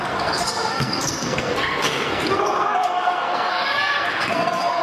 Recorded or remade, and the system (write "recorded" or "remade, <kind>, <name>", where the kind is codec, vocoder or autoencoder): remade, codec, SNAC